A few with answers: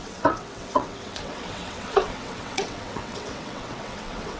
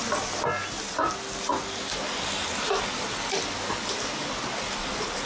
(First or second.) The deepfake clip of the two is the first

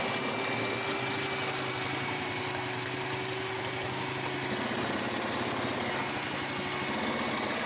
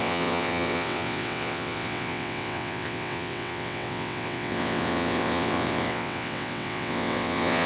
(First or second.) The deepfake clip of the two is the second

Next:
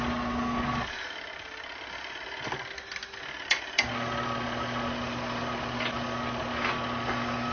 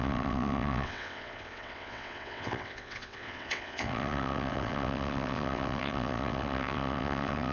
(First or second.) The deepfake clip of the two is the second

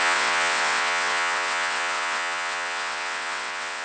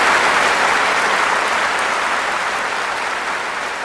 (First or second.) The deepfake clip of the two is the first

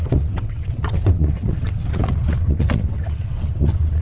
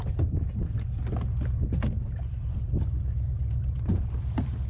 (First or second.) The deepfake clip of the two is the first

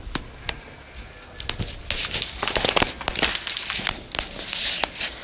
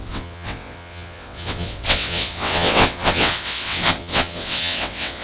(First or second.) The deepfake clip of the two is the second